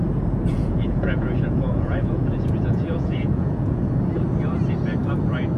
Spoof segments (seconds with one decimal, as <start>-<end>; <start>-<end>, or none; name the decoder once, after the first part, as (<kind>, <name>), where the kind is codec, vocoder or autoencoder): 0.5-3.9 (vocoder, Vocos)